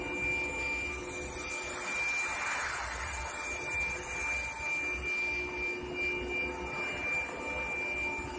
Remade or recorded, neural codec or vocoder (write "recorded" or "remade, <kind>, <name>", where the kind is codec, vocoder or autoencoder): recorded